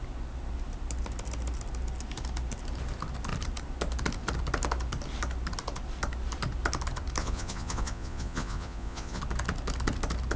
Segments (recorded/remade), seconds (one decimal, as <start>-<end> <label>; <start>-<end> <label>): 0.0-7.2 recorded; 7.2-9.2 remade; 9.2-10.4 recorded